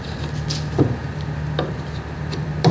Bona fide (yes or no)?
no